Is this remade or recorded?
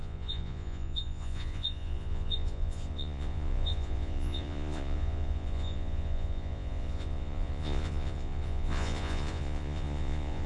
remade